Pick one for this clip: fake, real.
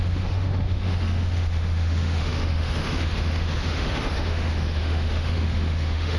fake